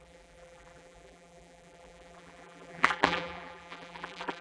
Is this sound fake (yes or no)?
yes